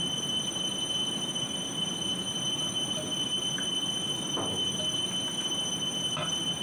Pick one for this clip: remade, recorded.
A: recorded